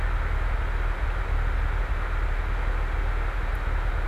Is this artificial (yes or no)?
no